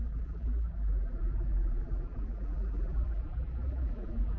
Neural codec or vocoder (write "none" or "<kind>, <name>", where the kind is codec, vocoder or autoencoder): vocoder, BigVGAN v2